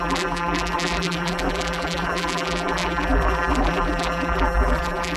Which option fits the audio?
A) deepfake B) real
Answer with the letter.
A